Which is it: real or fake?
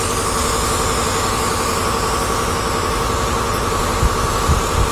real